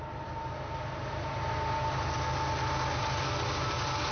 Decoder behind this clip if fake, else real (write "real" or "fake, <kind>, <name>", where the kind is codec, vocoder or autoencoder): real